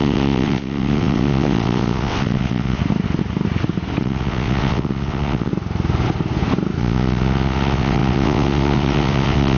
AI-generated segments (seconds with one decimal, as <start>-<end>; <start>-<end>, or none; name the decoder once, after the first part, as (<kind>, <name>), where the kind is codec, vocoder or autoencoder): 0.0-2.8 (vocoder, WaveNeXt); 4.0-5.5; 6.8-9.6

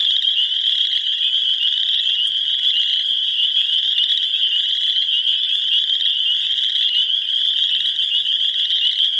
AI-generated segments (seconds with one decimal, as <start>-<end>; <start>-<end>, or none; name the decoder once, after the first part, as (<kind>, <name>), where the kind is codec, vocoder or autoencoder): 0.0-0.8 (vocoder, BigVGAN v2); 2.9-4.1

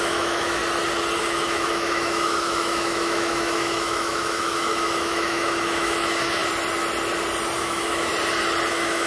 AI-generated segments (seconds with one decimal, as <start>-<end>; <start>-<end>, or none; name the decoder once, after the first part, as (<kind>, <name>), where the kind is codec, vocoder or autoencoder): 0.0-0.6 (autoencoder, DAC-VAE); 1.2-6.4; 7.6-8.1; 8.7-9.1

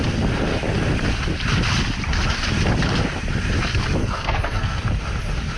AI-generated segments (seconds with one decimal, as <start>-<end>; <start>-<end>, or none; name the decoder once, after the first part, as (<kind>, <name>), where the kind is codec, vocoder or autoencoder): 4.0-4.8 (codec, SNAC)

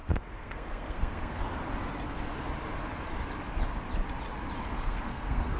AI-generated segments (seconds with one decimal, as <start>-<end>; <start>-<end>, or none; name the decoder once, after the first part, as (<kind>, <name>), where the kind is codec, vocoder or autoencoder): 0.0-1.4 (codec, SNAC); 4.7-5.6